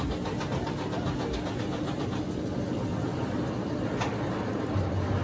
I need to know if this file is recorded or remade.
recorded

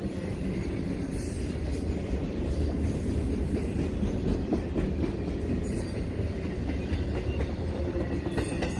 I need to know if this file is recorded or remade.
recorded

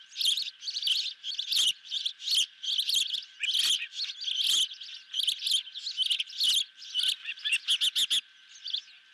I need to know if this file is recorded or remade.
recorded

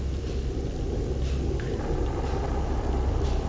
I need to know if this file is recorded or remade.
recorded